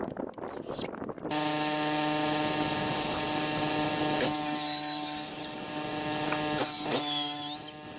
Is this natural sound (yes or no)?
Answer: yes